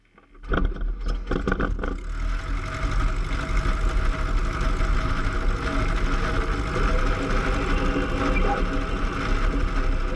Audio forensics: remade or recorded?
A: recorded